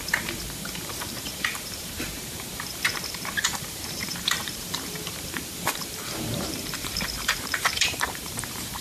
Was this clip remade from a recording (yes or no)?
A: yes